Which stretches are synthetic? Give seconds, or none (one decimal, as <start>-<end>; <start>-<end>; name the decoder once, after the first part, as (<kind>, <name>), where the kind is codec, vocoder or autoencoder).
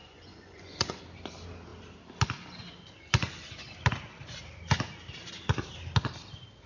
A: 0.0-1.0 (vocoder, Vocos)